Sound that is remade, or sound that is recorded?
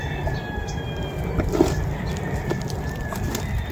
recorded